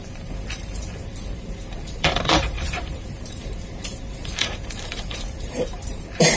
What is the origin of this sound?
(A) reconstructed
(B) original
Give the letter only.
A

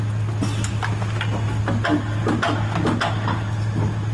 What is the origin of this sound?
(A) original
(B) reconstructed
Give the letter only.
A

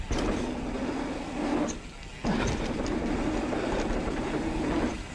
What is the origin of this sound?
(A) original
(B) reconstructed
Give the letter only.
A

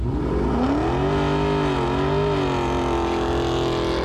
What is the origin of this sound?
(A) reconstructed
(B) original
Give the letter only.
B